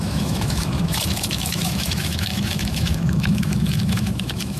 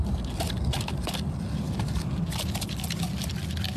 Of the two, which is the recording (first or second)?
second